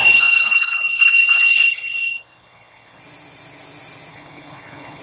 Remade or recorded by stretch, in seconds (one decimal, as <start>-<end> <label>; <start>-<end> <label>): 0.0-3.0 remade; 3.0-4.1 recorded; 4.1-5.0 remade